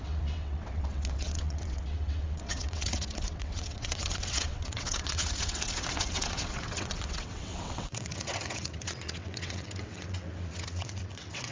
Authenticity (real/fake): fake